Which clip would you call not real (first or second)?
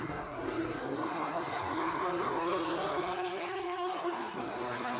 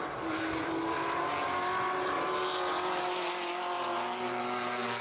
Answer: first